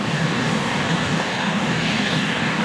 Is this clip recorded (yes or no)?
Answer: no